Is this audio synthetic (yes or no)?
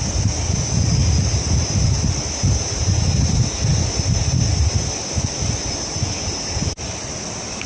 no